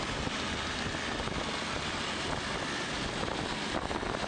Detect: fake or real real